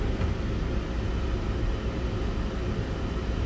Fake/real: real